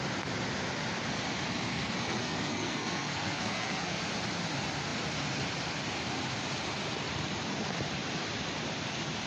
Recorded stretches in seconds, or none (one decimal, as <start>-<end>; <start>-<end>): 0.0-1.7; 4.0-9.3